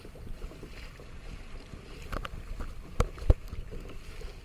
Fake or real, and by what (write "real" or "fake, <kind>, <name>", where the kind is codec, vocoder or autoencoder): real